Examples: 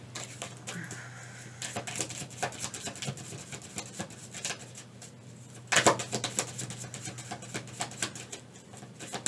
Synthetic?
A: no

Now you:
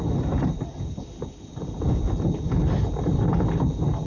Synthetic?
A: no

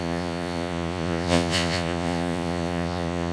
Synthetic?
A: yes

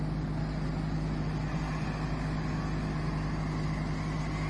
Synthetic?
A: no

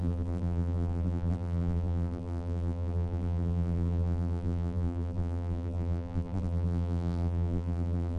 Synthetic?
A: yes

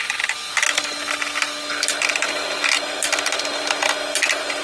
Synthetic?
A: no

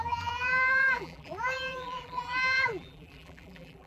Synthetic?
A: yes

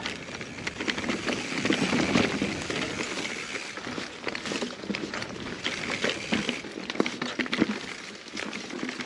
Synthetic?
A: no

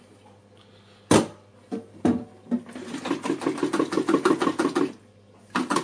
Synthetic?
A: no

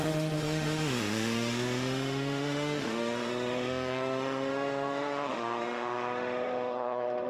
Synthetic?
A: yes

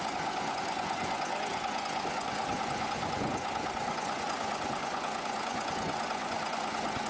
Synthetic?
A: yes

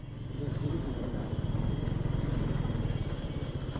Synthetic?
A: no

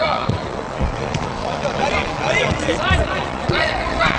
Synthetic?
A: yes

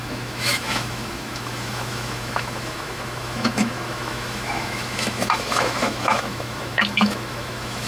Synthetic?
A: yes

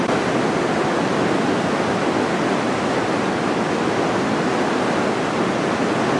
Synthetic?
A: no